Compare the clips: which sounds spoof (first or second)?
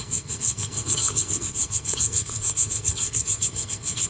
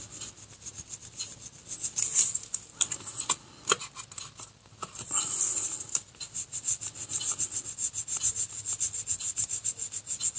first